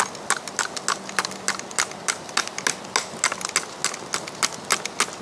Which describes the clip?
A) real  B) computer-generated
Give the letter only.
A